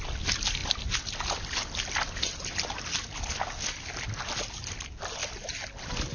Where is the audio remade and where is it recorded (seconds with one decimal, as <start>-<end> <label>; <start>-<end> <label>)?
0.0-6.1 recorded